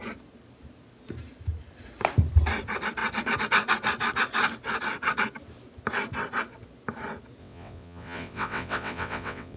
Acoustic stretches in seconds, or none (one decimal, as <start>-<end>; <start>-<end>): 0.0-7.4